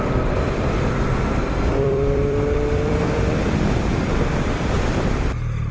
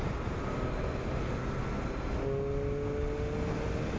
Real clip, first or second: second